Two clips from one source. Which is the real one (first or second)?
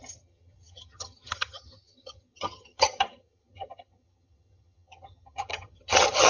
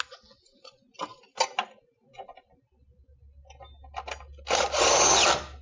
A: second